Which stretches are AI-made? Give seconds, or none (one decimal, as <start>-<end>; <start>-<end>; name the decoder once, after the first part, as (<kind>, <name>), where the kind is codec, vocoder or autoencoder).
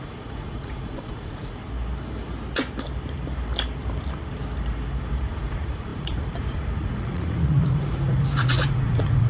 0.0-1.6 (vocoder, Vocos); 5.3-9.3